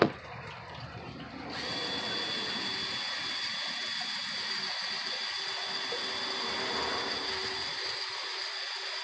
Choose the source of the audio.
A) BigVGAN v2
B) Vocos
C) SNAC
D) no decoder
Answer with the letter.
D